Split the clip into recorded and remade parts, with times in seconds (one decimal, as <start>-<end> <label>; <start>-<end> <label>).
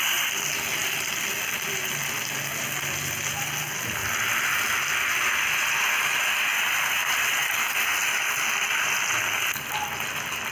0.0-10.5 recorded